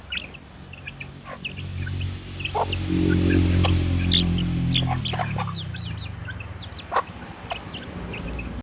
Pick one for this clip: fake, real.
real